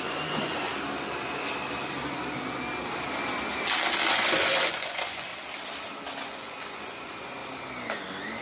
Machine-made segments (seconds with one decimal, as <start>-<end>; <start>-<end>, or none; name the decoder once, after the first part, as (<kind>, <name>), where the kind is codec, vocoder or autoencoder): 0.0-0.7 (vocoder, Vocos); 4.1-5.3; 6.1-7.4